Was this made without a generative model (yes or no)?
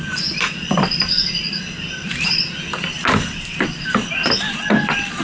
yes